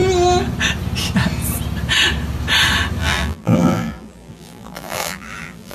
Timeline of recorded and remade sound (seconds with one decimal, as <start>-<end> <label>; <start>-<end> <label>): 0.0-3.0 recorded; 3.0-5.7 remade